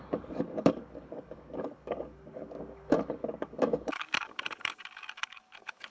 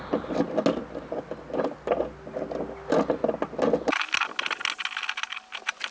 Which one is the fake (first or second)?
first